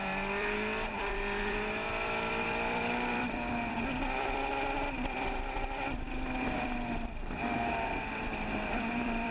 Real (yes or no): no